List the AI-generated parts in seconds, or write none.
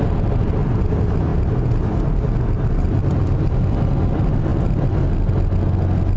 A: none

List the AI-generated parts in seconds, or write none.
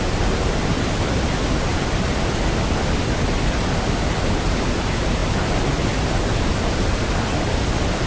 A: none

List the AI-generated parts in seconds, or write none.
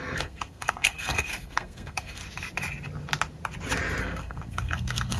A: 0.0-2.2; 4.0-5.2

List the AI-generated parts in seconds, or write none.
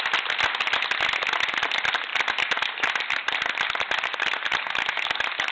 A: none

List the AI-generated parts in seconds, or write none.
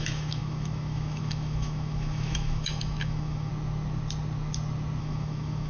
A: 0.0-3.5; 5.0-5.7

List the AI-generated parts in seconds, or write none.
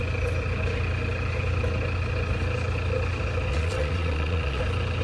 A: 3.5-4.6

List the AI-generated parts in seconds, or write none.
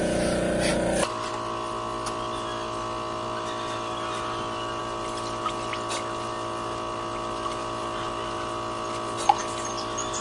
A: none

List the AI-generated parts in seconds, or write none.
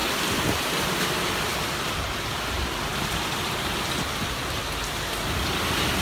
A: none